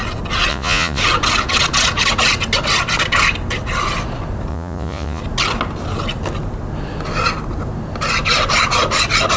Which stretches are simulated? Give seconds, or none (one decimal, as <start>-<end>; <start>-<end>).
0.5-1.0; 4.5-5.2